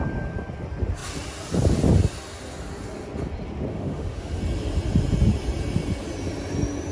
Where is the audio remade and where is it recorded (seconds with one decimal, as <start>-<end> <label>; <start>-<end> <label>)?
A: 0.0-3.7 recorded; 3.7-4.4 remade; 4.4-6.9 recorded